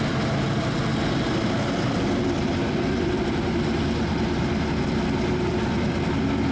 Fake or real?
real